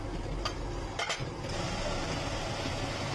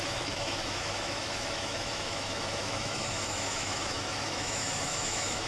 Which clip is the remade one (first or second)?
second